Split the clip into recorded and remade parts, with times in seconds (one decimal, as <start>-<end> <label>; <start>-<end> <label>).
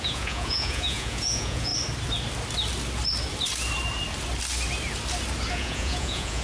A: 0.0-1.7 remade; 1.7-5.5 recorded; 5.5-6.4 remade